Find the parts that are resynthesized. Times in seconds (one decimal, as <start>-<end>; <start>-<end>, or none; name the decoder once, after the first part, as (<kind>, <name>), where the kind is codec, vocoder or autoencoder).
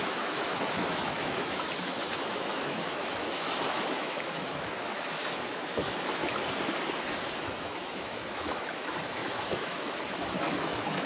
0.0-6.2 (autoencoder, DAC-VAE); 7.4-11.1